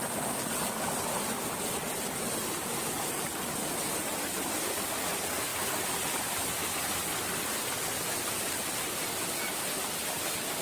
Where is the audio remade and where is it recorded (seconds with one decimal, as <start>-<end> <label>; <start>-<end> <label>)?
0.0-10.6 recorded